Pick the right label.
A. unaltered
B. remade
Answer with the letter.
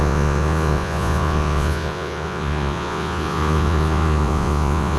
B